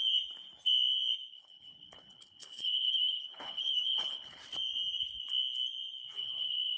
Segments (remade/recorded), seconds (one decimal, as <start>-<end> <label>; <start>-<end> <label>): 0.0-1.3 recorded; 1.3-4.4 remade; 4.4-6.1 recorded; 6.1-6.8 remade